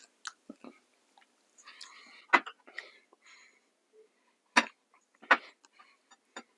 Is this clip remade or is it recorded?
recorded